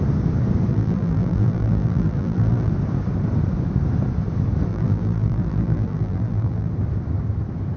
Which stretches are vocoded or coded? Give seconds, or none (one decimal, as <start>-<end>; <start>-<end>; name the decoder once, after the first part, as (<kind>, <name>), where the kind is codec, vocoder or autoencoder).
0.7-2.7 (vocoder, BigVGAN v2); 4.7-6.7